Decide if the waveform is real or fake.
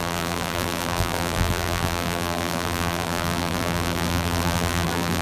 fake